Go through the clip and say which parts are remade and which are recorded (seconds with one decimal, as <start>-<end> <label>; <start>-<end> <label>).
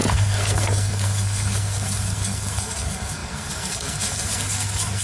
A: 0.0-5.0 remade